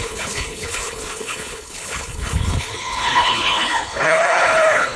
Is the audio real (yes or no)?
no